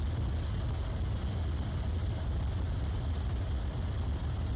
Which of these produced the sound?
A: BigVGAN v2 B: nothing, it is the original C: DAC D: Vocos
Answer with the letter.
B